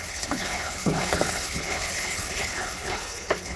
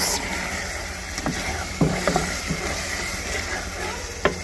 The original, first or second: second